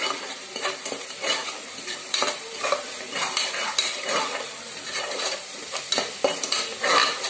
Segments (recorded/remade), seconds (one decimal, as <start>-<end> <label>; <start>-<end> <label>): 0.0-1.4 recorded; 1.4-5.8 remade; 5.8-7.3 recorded